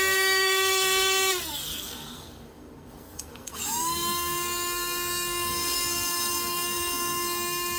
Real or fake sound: fake